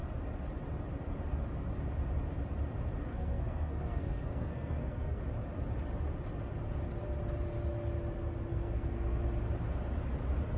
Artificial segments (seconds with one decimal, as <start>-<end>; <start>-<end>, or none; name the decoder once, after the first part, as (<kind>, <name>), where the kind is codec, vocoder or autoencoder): 3.1-5.2 (codec, SNAC); 8.5-9.2